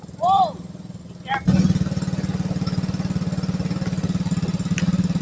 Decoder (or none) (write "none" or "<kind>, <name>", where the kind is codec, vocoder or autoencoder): none